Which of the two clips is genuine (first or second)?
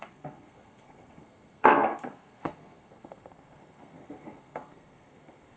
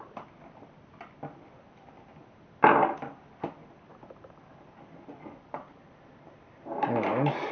second